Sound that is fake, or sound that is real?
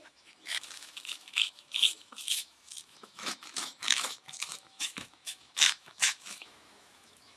fake